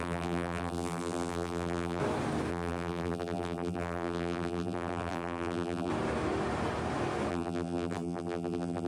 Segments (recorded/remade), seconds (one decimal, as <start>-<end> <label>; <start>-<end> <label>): 0.0-2.0 remade; 2.0-2.5 recorded; 2.5-5.9 remade; 5.9-7.3 recorded; 7.3-8.9 remade